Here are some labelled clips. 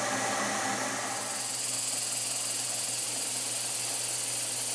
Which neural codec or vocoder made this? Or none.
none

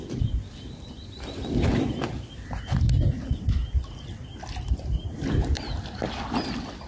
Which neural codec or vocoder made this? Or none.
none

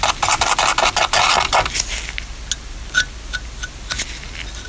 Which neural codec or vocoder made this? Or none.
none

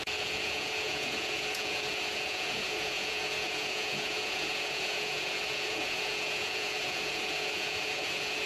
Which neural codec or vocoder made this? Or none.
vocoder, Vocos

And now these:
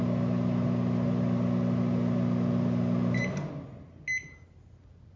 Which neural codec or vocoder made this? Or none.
none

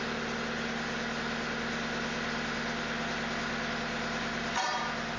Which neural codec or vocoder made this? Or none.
none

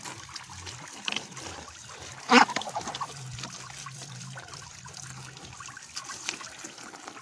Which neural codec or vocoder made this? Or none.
vocoder, BigVGAN v2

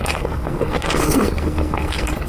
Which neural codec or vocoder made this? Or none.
codec, SNAC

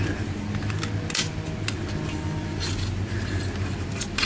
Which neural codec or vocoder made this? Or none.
none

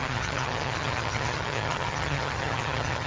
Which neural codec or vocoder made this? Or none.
vocoder, HiFi-GAN